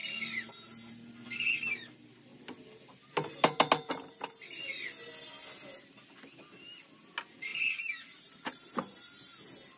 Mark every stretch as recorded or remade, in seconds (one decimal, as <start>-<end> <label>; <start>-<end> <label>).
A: 0.0-9.8 recorded